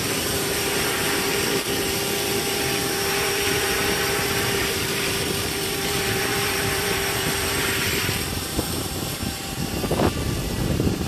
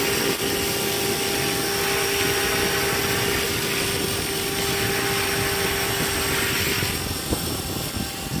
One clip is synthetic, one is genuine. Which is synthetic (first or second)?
first